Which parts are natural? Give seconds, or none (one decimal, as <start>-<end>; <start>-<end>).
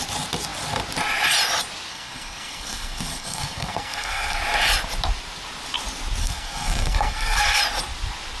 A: 0.0-1.9; 4.4-6.2; 7.6-8.4